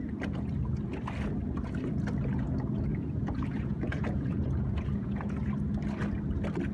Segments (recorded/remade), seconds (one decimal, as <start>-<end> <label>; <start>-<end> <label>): 0.0-2.9 recorded; 2.9-5.5 remade; 5.5-6.7 recorded